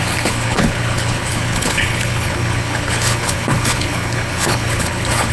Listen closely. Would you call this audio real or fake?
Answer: fake